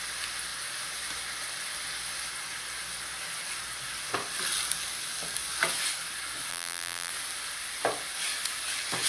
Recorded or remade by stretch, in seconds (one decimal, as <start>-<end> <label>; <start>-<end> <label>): 0.0-6.5 recorded; 6.5-7.1 remade; 7.1-9.1 recorded